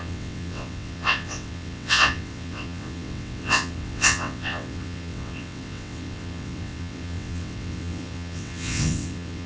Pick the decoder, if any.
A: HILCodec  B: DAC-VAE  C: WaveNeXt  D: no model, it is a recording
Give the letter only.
C